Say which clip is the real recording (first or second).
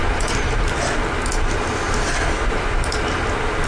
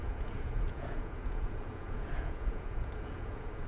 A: first